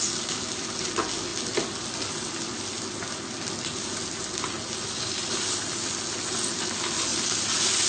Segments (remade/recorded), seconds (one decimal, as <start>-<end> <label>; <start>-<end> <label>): 0.0-7.9 recorded